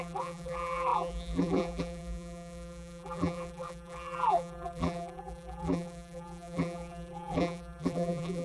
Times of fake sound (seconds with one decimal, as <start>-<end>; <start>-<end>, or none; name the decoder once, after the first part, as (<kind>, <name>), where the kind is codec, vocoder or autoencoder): 0.0-8.4 (vocoder, BigVGAN v2)